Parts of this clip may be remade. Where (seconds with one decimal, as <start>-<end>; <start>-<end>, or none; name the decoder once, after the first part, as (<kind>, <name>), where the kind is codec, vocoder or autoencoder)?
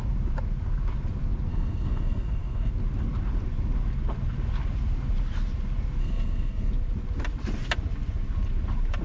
1.5-2.7 (codec, SNAC); 6.0-6.7